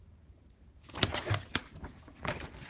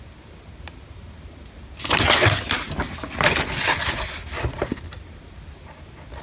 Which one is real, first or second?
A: second